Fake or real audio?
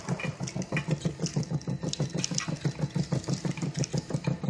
real